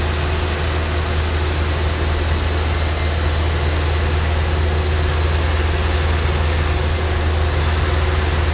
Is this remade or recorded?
recorded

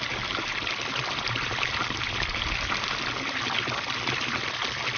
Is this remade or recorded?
recorded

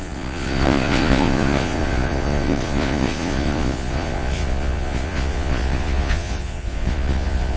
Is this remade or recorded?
remade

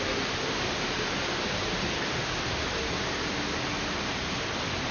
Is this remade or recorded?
recorded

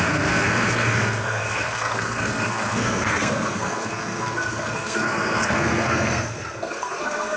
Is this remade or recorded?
remade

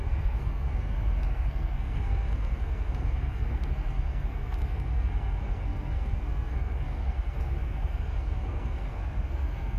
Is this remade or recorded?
remade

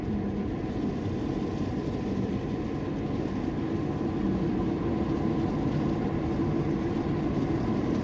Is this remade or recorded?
recorded